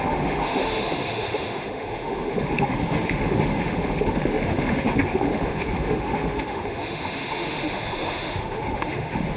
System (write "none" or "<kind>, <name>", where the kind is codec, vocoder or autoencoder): autoencoder, DAC-VAE